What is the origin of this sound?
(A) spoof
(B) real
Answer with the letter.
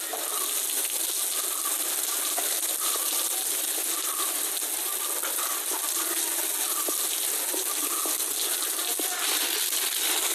B